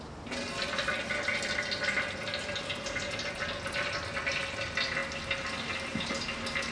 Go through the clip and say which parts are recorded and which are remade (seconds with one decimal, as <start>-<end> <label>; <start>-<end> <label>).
0.0-6.7 recorded